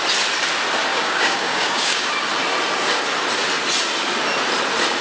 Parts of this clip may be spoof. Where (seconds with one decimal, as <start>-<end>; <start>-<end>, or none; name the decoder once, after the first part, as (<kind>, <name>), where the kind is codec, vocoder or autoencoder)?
0.9-2.1 (codec, DAC)